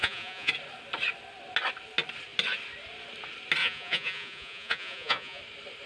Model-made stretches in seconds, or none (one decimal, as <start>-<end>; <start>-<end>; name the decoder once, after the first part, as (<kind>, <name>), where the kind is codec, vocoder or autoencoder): 0.0-0.5 (vocoder, Vocos); 3.6-5.4